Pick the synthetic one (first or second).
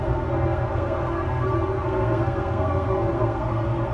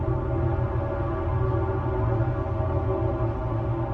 first